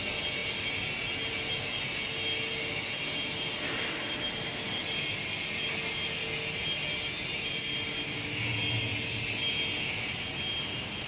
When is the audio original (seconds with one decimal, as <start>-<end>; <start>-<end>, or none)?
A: 0.0-11.1